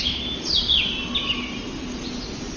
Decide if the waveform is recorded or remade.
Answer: recorded